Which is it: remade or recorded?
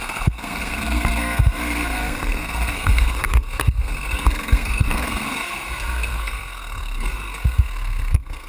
remade